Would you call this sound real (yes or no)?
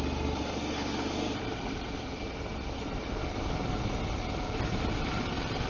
yes